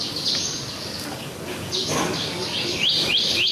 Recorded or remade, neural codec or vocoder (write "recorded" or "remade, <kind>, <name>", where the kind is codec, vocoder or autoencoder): remade, codec, DAC